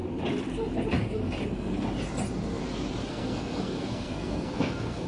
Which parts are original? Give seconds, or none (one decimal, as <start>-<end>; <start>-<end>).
0.0-3.1